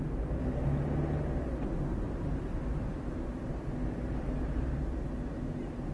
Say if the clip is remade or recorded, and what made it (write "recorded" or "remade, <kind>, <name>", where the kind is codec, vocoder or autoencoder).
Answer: recorded